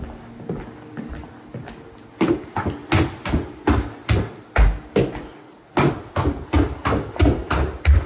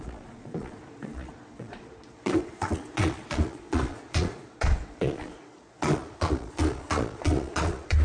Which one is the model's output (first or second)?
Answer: second